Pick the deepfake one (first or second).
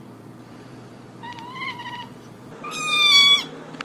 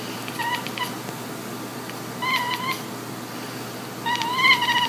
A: first